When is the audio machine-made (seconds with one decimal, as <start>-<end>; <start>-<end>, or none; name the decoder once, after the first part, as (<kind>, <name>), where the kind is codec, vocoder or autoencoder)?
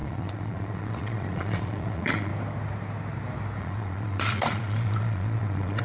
0.0-2.3 (vocoder, Vocos); 3.6-5.8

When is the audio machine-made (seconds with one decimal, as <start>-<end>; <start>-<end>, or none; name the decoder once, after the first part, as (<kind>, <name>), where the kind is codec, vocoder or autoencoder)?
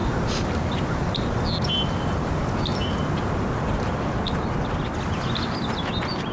none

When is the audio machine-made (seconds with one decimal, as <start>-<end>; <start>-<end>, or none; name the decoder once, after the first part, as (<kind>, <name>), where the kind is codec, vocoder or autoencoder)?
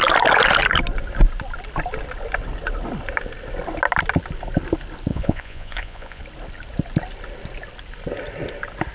5.1-6.2 (vocoder, Vocos)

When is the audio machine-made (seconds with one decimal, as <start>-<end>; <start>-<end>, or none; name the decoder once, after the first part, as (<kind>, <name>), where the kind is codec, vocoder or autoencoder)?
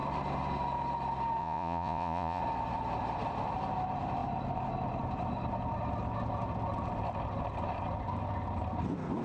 1.4-2.4 (vocoder, Vocos)